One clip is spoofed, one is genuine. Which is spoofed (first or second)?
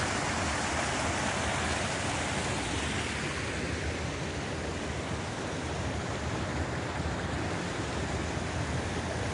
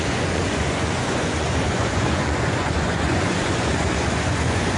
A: second